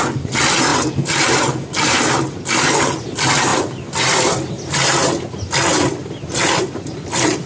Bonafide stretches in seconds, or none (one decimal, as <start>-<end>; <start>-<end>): 0.0-7.5